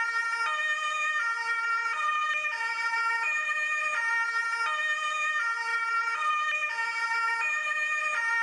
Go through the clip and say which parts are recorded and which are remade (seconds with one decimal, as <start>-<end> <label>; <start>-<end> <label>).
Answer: 0.0-1.8 recorded; 1.8-3.5 remade; 3.5-5.7 recorded; 5.7-6.3 remade; 6.3-8.4 recorded